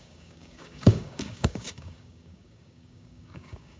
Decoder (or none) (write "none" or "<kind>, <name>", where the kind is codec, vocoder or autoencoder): codec, DAC